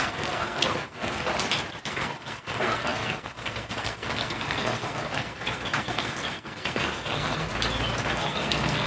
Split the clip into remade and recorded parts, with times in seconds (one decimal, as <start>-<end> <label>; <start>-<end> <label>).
0.0-1.3 remade; 1.3-1.9 recorded; 1.9-7.5 remade; 7.5-8.1 recorded; 8.1-8.9 remade